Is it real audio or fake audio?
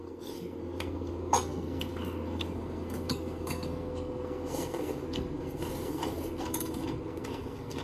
fake